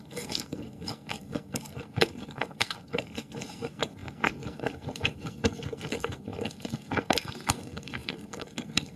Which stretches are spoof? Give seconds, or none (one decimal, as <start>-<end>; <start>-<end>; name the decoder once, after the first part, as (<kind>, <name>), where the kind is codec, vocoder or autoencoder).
0.0-9.0 (codec, SNAC)